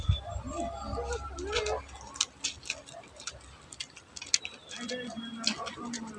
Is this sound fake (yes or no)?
no